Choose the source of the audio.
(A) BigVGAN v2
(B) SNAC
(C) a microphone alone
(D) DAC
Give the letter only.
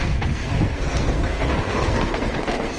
B